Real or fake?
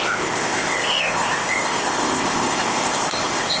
fake